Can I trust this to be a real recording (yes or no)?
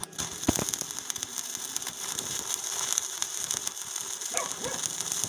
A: yes